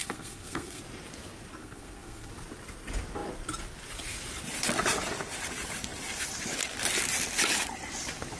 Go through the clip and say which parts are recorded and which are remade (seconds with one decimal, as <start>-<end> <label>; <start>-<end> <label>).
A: 0.0-0.8 remade; 0.8-1.6 recorded; 1.6-2.3 remade; 2.3-8.4 recorded